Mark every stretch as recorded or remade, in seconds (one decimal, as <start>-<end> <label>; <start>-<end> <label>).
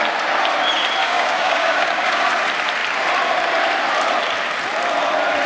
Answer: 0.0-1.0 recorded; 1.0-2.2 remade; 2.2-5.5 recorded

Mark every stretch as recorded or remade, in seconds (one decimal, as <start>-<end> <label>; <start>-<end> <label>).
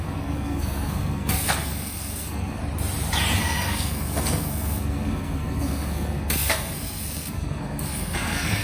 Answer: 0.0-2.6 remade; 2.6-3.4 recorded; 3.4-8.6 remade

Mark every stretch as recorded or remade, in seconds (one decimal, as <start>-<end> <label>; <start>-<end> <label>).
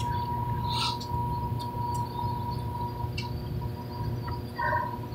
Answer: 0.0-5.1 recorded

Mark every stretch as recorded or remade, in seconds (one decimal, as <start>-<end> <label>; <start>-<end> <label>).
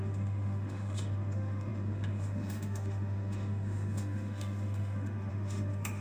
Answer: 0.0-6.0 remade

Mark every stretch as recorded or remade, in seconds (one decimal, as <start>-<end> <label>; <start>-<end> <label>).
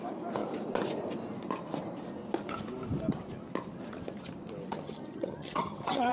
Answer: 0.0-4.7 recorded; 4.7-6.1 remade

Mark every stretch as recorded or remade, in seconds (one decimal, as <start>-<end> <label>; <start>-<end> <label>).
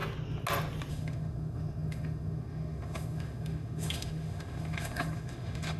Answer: 0.0-0.9 recorded; 0.9-5.8 remade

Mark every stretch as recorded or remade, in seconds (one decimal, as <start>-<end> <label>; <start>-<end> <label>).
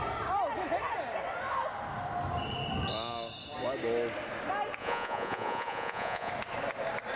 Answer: 0.0-4.8 recorded; 4.8-6.3 remade; 6.3-7.2 recorded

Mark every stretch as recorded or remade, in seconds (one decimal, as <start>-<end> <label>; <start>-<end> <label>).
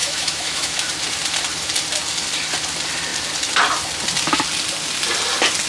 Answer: 0.0-0.9 remade; 0.9-5.7 recorded